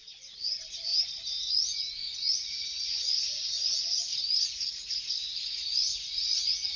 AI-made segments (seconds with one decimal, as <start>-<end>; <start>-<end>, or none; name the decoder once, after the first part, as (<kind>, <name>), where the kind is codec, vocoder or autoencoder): 0.0-0.9 (vocoder, Vocos); 1.5-6.8